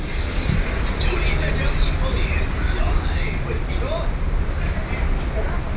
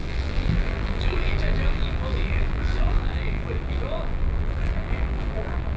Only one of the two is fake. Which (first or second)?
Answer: second